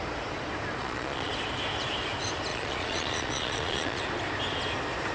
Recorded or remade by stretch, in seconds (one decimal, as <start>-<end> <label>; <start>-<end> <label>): 0.0-0.8 recorded; 0.8-1.3 remade; 1.3-2.5 recorded; 2.5-4.0 remade; 4.0-5.1 recorded